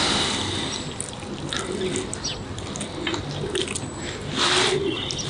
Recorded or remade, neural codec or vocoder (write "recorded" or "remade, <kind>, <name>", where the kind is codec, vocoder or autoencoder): recorded